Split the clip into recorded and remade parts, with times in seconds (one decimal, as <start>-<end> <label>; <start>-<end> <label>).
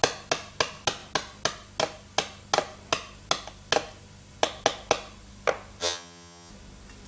0.0-5.8 recorded; 5.8-6.5 remade; 6.5-7.1 recorded